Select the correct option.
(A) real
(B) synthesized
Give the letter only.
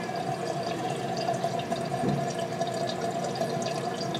A